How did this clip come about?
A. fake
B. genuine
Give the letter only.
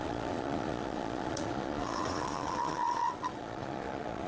A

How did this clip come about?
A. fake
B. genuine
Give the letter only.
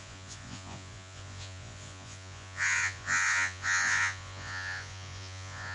A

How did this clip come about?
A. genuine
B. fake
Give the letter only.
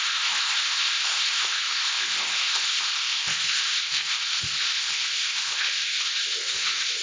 B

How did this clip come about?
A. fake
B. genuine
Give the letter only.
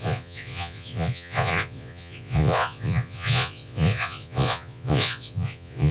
A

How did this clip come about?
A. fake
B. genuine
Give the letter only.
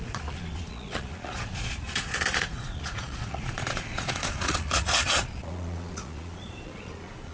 A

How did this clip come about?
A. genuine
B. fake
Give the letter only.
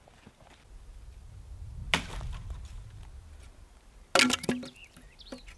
A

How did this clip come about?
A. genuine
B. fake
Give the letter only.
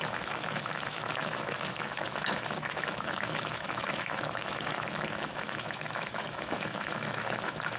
B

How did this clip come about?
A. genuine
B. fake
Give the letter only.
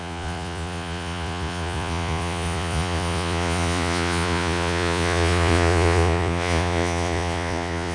B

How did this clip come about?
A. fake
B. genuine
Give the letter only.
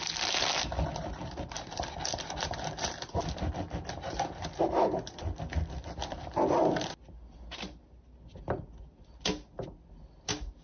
B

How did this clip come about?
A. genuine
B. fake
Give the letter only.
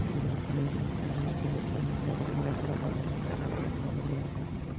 B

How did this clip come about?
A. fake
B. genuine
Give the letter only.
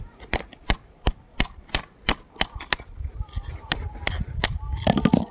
B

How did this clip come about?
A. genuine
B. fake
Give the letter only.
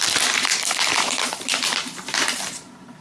B